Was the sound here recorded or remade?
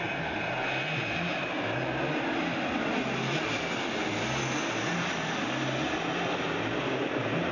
recorded